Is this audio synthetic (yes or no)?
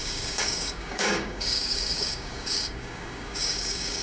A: yes